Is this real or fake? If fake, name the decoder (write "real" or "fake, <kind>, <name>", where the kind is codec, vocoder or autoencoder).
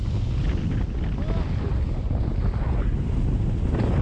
real